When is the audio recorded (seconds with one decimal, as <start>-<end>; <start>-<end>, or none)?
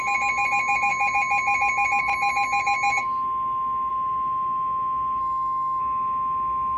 0.0-5.2; 5.8-6.8